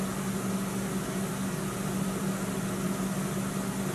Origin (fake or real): real